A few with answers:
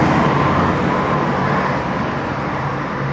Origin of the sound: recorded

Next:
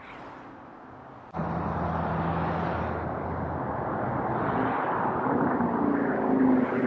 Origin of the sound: recorded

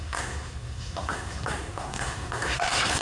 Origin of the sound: remade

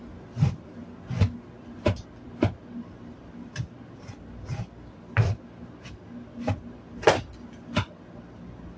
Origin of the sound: recorded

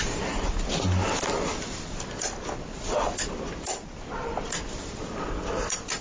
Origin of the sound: recorded